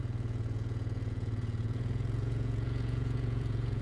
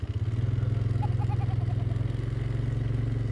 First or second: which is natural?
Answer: second